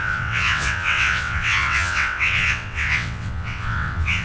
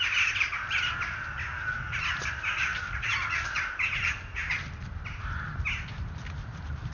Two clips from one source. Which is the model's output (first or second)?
first